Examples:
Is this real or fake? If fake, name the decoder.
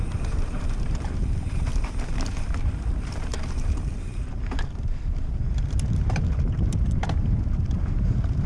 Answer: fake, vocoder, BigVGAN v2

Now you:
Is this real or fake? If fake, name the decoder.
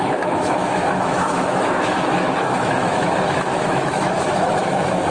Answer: fake, autoencoder, DAC-VAE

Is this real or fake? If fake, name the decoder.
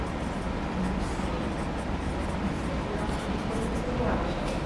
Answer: real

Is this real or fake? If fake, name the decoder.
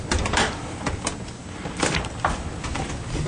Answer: real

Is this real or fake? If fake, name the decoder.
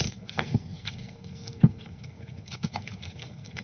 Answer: fake, codec, SNAC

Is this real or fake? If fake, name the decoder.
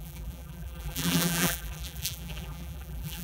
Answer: fake, vocoder, BigVGAN v2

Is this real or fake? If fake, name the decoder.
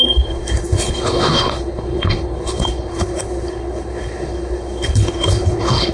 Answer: fake, codec, HILCodec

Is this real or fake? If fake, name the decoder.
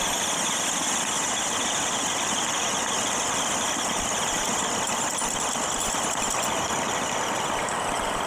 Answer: fake, vocoder, BigVGAN v2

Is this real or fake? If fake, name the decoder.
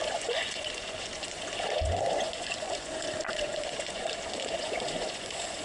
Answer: fake, vocoder, Vocos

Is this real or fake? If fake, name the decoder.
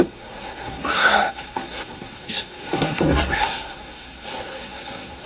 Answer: fake, codec, SNAC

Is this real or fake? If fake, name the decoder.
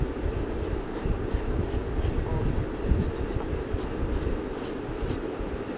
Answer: real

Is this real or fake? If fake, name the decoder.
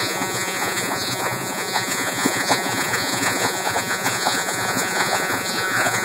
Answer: fake, vocoder, Vocos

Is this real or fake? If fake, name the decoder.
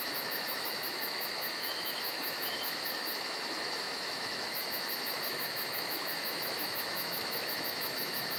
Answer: fake, autoencoder, DAC-VAE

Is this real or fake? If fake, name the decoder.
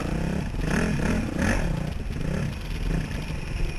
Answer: real